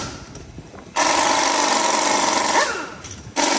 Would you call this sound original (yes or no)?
yes